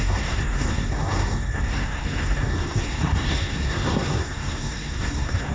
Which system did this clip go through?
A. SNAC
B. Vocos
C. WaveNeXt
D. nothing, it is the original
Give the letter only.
A